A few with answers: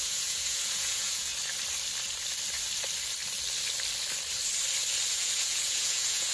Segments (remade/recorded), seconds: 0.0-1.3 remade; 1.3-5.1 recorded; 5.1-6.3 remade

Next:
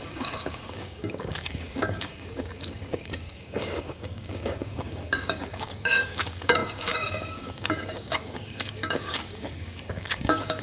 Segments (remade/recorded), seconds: 0.0-10.6 remade

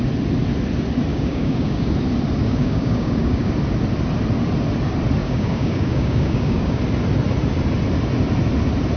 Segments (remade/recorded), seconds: 0.0-1.1 recorded; 1.1-1.9 remade; 1.9-2.4 recorded; 2.4-3.5 remade; 3.5-5.2 recorded; 5.2-6.8 remade; 6.8-9.0 recorded

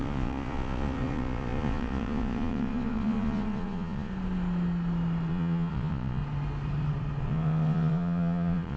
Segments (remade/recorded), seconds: 0.0-4.1 remade; 4.1-5.3 recorded; 5.3-6.2 remade; 6.2-7.2 recorded; 7.2-8.8 remade

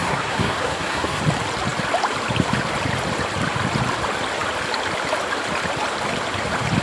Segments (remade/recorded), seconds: 0.0-1.2 remade; 1.2-6.8 recorded

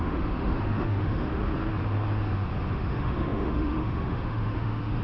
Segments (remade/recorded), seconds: 0.0-1.4 remade; 1.4-2.7 recorded; 2.7-5.0 remade

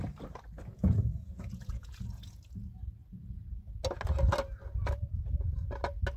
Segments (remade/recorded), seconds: 0.0-0.7 recorded; 0.7-2.4 remade; 2.4-6.2 recorded

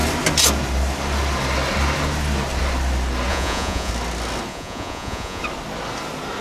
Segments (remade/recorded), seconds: 0.0-3.3 recorded; 3.3-3.9 remade; 3.9-4.5 recorded; 4.5-5.4 remade; 5.4-6.4 recorded